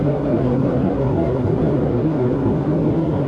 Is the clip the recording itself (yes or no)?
no